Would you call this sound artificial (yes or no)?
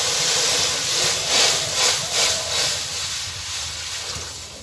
no